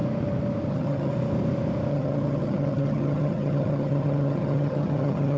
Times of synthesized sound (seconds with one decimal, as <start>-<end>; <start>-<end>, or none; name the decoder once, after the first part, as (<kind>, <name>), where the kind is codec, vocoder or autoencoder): 0.7-1.1 (vocoder, HiFi-GAN); 1.9-5.4